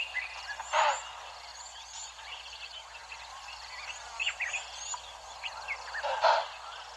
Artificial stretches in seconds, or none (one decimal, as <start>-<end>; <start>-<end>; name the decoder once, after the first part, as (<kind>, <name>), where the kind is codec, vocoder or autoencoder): none